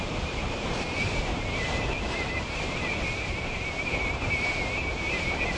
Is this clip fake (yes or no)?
yes